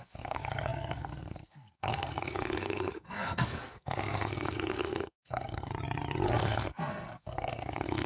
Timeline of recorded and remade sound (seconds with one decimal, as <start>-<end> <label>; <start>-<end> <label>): 0.0-5.7 remade; 5.7-6.4 recorded; 6.4-8.1 remade